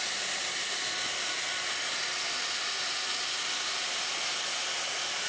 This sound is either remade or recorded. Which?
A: recorded